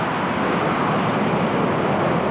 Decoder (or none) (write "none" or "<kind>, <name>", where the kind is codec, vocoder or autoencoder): none